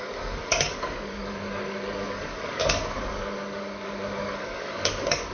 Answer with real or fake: fake